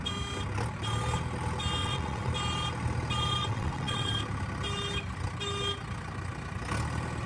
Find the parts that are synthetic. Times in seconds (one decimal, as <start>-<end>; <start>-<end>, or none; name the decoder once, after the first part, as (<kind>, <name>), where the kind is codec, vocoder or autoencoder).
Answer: 1.8-2.3 (vocoder, WaveNeXt); 3.4-4.1